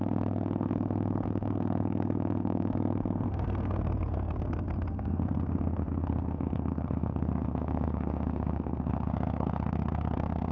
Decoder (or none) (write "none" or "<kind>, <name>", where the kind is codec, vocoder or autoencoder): codec, SNAC